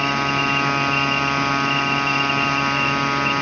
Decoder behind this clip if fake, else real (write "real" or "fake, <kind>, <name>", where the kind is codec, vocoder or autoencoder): real